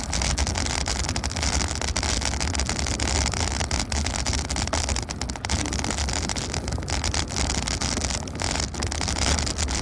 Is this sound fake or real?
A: real